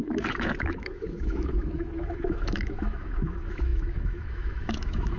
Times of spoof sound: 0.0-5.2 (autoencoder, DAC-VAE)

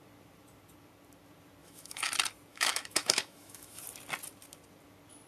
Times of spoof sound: 1.6-2.1 (autoencoder, DAC-VAE); 2.5-3.8

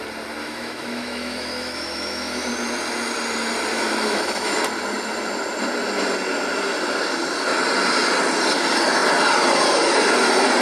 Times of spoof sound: 0.4-2.5 (autoencoder, DAC-VAE); 3.7-4.6